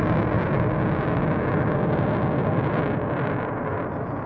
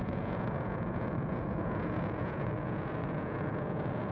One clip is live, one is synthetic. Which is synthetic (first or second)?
second